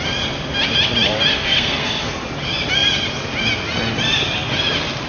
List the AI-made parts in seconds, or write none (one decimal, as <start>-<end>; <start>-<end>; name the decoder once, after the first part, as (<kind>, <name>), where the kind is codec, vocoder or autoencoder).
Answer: 1.3-2.1 (codec, SNAC)